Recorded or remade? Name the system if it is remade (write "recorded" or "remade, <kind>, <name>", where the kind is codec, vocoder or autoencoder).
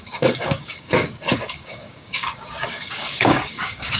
remade, codec, DAC